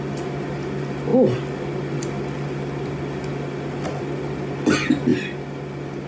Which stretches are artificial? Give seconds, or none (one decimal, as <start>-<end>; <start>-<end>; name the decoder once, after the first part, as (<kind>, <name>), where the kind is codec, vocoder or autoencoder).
none